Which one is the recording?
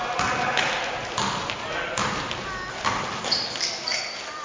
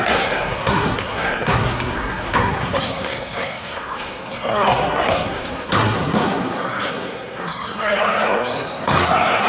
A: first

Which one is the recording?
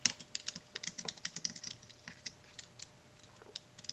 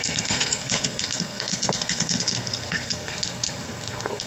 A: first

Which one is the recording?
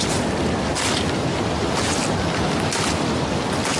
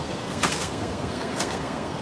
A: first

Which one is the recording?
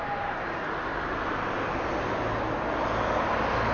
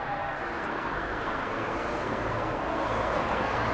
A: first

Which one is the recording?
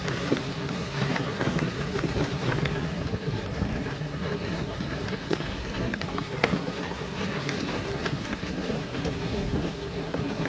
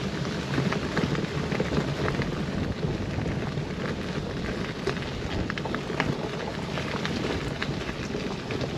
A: second